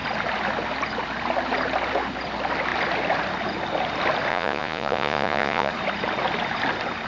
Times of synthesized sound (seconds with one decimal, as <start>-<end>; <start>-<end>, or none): 4.3-5.7